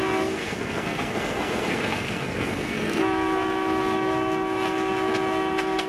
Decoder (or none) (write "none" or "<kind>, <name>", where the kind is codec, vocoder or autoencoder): codec, SNAC